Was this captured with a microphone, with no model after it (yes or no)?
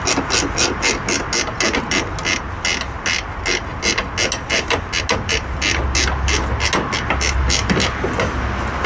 yes